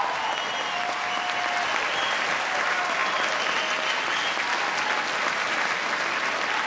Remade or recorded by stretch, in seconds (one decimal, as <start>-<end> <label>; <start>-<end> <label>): 0.0-6.7 recorded